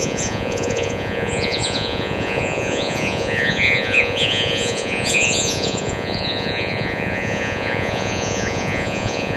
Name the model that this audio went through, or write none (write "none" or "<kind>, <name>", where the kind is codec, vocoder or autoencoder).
vocoder, Vocos